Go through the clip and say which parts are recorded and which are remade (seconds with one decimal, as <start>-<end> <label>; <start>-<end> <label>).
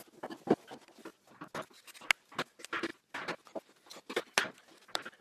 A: 0.0-5.2 recorded